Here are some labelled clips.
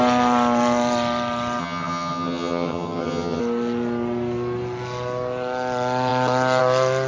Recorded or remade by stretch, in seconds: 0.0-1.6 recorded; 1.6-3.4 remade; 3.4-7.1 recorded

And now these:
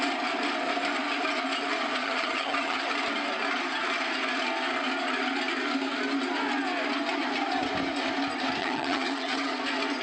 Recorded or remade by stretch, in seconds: 0.0-2.0 recorded; 2.0-2.8 remade; 2.8-8.6 recorded; 8.6-9.5 remade; 9.5-10.0 recorded

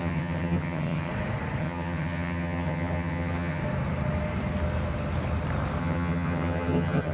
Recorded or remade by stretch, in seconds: 0.0-1.1 remade; 1.1-1.6 recorded; 1.6-3.6 remade; 3.6-5.8 recorded; 5.8-7.1 remade

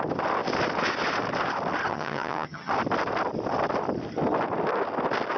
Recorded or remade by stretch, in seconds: 0.0-1.9 recorded; 1.9-2.7 remade; 2.7-5.4 recorded

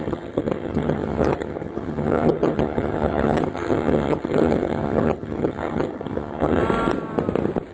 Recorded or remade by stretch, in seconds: 0.0-6.6 remade; 6.6-7.7 recorded

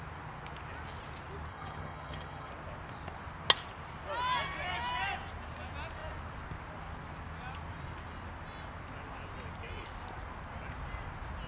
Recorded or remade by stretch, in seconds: 0.0-1.5 recorded; 1.5-2.5 remade; 2.5-11.5 recorded